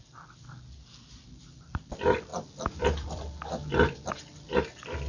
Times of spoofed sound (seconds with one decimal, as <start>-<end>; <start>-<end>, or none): 0.0-5.1